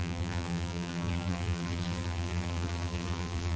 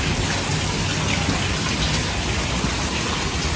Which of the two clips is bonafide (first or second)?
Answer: second